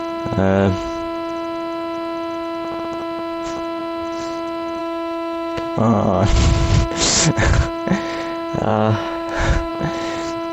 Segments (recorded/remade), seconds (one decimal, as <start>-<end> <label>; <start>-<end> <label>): 0.0-4.8 recorded; 4.8-5.8 remade; 5.8-8.7 recorded; 8.7-9.7 remade; 9.7-10.5 recorded